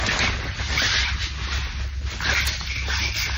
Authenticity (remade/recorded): recorded